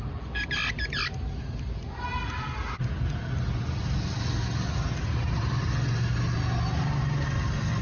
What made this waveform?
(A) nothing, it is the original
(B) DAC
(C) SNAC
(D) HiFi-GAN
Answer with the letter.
A